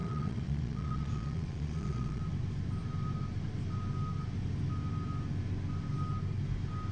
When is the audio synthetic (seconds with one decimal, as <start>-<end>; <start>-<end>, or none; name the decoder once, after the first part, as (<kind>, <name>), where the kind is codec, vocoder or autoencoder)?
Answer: 0.0-2.2 (vocoder, Vocos)